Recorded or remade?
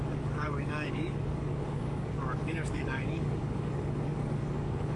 remade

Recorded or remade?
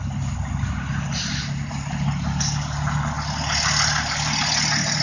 recorded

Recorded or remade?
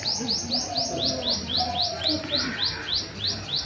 recorded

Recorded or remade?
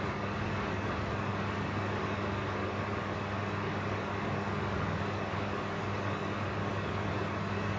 remade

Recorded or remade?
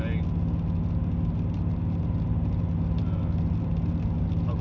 recorded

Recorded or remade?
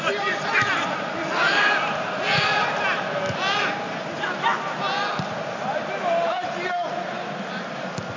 recorded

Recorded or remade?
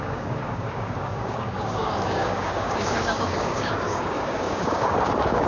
remade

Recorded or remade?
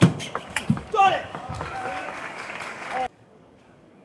remade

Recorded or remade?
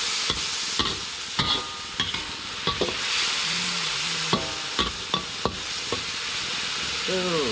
recorded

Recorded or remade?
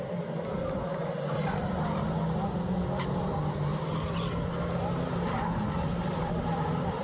recorded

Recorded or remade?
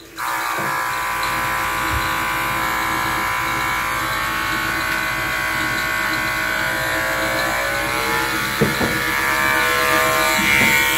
recorded